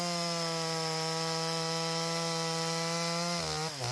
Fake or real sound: real